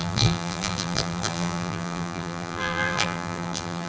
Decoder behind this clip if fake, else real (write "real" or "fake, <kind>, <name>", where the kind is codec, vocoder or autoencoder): fake, vocoder, BigVGAN v2